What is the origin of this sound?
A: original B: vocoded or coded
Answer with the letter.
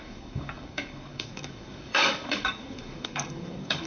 B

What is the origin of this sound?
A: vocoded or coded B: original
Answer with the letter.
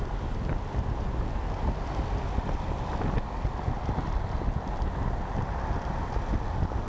B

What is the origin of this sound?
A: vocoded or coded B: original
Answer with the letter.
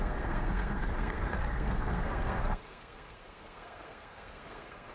A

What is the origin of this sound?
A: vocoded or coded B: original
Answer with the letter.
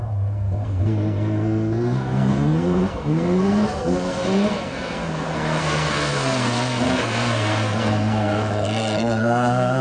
A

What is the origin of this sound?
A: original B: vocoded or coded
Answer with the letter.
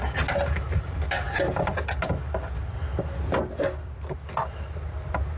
A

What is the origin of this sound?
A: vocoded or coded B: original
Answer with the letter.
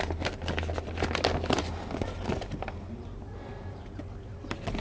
B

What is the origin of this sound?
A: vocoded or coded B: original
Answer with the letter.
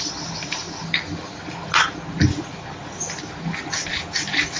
B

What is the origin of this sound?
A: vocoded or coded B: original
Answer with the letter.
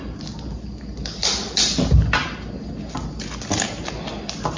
B